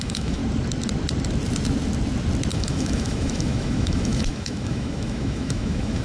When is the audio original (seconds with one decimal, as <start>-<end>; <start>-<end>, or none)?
0.4-2.5